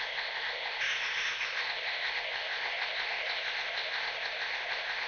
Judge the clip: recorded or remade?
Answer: remade